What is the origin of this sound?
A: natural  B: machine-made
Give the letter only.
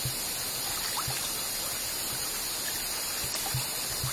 A